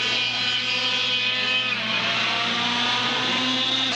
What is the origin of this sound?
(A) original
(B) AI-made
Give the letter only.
B